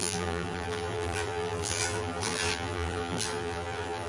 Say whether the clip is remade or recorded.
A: remade